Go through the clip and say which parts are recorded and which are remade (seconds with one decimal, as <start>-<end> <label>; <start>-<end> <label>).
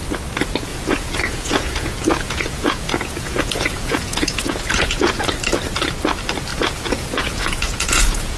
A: 0.0-0.7 recorded; 0.7-5.2 remade; 5.2-6.5 recorded; 6.5-8.4 remade